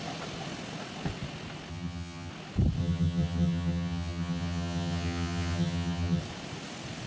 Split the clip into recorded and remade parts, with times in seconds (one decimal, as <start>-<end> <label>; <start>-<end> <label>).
0.0-1.7 recorded; 1.7-2.3 remade; 2.3-2.8 recorded; 2.8-6.2 remade; 6.2-7.1 recorded